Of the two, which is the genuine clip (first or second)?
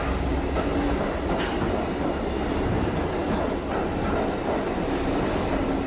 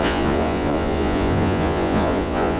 first